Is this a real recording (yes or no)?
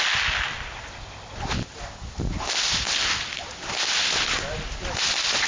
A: yes